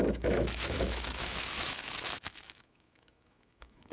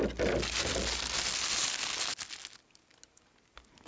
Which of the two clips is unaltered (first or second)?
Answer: second